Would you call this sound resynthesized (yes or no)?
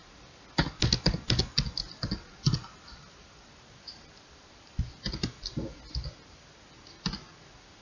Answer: no